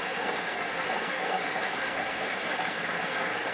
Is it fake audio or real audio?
fake